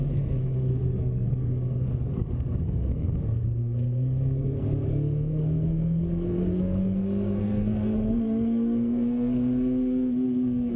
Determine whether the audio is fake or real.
fake